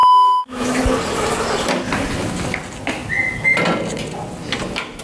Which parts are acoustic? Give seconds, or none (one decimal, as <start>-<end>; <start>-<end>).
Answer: 0.8-5.0

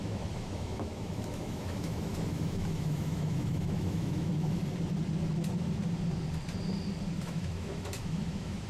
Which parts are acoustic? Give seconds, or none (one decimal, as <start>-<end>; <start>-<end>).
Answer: 4.6-7.2